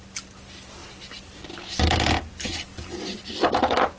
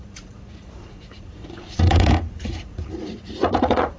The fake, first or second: second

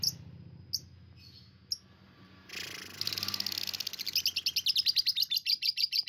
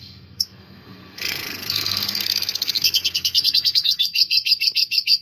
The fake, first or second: second